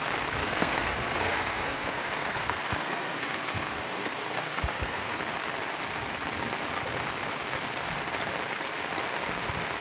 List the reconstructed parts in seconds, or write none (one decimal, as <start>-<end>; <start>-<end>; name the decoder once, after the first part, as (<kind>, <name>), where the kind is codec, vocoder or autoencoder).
0.4-5.2 (codec, SNAC)

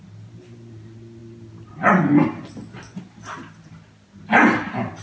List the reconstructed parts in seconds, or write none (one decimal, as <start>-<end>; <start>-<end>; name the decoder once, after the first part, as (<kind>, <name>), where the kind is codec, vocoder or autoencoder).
none

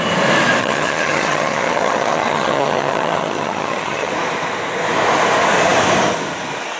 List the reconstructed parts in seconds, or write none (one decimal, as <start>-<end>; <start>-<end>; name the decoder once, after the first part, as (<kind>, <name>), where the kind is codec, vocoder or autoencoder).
0.6-4.1 (vocoder, HiFi-GAN)

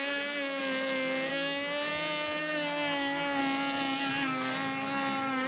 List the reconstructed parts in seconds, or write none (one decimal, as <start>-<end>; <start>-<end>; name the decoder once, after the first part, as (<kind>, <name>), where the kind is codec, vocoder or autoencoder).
0.0-0.6 (codec, SNAC); 1.3-1.9; 2.4-3.4; 4.1-5.5